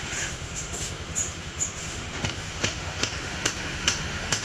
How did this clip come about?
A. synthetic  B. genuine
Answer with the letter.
A